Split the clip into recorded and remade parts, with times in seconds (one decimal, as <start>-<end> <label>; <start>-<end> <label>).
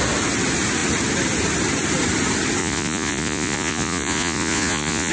0.0-2.6 recorded; 2.6-5.1 remade